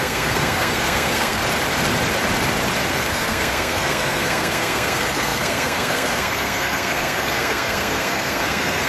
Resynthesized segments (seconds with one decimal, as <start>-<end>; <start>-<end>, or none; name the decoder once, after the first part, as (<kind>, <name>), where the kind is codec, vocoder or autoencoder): 0.0-1.4 (codec, SNAC); 2.9-8.9